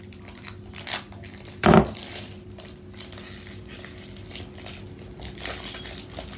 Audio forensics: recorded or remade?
recorded